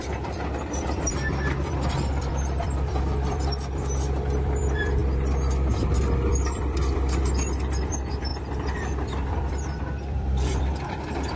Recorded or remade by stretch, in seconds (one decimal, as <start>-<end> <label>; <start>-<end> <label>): 0.0-5.0 remade; 5.0-6.3 recorded; 6.3-11.4 remade